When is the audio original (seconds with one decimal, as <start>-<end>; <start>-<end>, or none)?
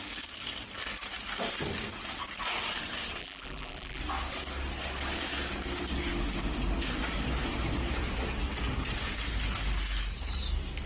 0.0-3.2; 4.0-10.9